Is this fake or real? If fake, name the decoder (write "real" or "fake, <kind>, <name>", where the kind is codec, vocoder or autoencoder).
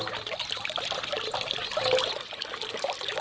real